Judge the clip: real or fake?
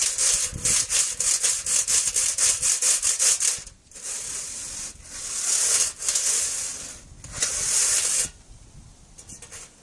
real